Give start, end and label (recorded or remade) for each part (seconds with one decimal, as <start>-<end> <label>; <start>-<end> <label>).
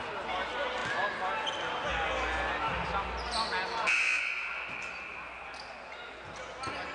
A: 0.0-6.9 recorded